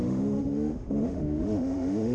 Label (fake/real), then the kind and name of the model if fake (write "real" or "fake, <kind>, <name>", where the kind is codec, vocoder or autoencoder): fake, autoencoder, DAC-VAE